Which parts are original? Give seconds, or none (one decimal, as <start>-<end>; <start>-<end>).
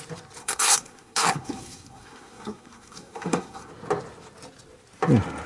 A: 0.0-0.4; 3.7-5.5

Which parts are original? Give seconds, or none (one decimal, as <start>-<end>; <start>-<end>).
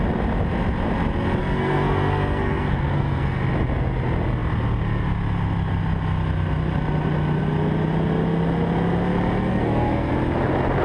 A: 0.0-1.4; 3.4-9.5; 10.1-10.8